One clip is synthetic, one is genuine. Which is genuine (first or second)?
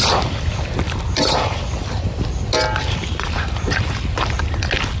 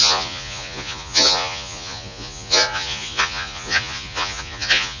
first